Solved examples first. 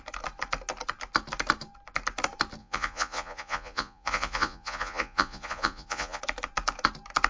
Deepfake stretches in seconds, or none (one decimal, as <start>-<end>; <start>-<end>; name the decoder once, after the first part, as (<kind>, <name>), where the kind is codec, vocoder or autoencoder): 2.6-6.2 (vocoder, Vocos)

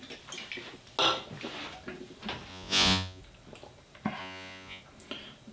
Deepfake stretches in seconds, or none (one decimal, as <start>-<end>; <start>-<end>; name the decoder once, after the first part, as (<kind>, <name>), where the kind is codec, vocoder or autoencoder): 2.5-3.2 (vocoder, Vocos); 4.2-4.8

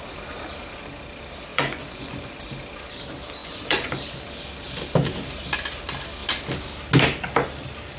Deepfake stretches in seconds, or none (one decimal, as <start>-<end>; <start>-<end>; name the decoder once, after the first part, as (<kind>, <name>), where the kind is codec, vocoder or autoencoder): 1.5-2.3 (vocoder, Vocos); 3.4-3.9